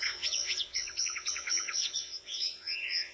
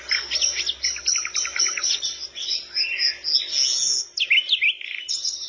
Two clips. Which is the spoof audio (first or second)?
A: first